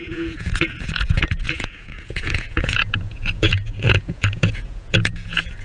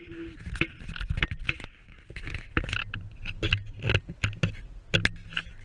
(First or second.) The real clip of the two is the second